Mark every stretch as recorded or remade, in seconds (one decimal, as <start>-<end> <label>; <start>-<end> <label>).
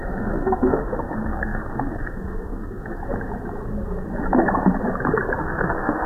0.0-3.0 remade; 3.0-5.4 recorded; 5.4-6.1 remade